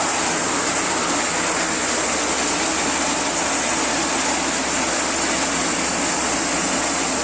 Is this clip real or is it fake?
real